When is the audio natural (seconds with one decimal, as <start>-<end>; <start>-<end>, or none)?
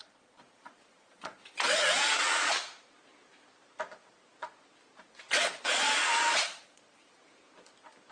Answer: 2.5-5.3; 7.1-8.1